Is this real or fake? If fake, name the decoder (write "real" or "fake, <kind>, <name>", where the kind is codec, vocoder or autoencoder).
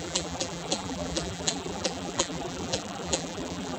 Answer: fake, vocoder, BigVGAN v2